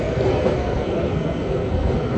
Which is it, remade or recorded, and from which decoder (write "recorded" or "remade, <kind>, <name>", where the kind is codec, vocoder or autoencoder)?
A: remade, codec, SNAC